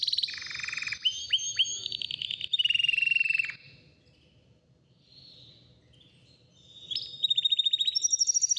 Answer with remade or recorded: recorded